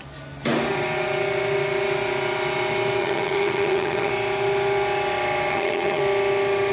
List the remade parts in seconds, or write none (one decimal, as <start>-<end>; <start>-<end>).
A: 3.0-4.1; 5.5-6.0